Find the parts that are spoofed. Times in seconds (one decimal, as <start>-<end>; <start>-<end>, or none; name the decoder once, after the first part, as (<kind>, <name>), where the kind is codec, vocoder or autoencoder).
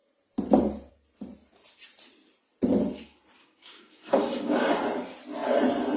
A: 3.4-4.7 (codec, DAC)